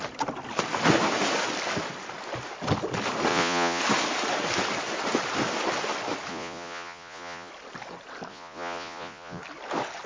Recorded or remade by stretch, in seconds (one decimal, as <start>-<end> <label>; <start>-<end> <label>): 0.0-3.3 recorded; 3.3-3.8 remade; 3.8-6.3 recorded; 6.3-7.5 remade; 7.5-8.3 recorded; 8.3-9.4 remade; 9.4-10.1 recorded